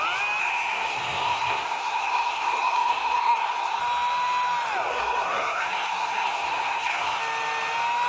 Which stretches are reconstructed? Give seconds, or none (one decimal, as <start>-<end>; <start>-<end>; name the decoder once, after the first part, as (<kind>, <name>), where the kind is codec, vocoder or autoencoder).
0.4-3.8 (codec, SNAC); 4.9-7.2